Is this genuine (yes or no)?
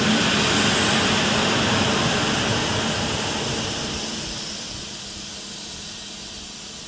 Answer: yes